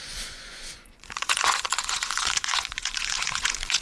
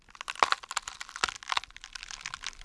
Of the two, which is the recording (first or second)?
second